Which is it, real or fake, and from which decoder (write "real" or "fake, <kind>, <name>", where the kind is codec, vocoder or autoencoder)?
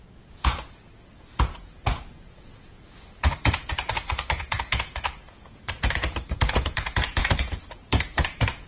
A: fake, vocoder, Vocos